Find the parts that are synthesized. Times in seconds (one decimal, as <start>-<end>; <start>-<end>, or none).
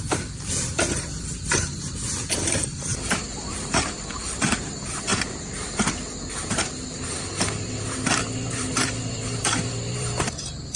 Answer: 0.0-5.1; 8.2-10.8